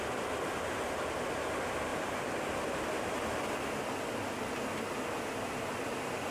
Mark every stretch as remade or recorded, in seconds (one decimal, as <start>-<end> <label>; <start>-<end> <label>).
0.0-6.3 recorded